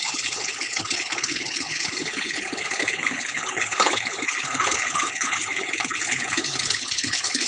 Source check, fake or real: fake